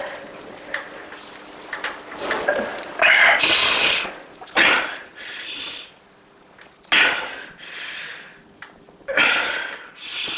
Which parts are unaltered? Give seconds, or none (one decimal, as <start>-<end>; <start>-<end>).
0.0-10.4